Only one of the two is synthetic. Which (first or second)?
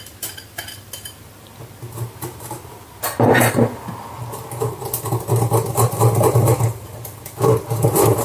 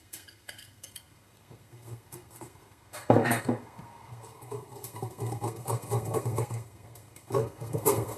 second